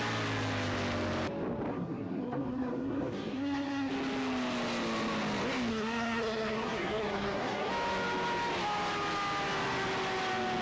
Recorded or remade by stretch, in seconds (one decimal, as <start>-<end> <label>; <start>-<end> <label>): 0.0-1.7 recorded; 1.7-3.9 remade; 3.9-5.7 recorded; 5.7-7.7 remade; 7.7-10.6 recorded

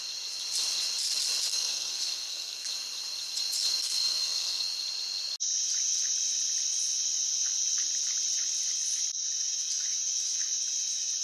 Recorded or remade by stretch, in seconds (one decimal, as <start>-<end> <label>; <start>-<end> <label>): 0.0-1.5 recorded; 1.5-2.7 remade; 2.7-3.8 recorded; 3.8-4.6 remade; 4.6-11.2 recorded